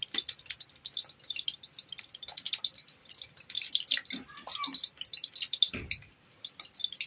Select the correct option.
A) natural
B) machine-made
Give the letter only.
A